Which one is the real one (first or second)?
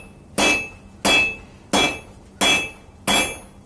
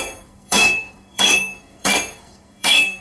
first